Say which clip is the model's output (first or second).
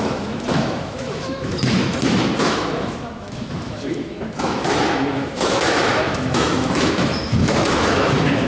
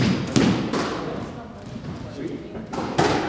first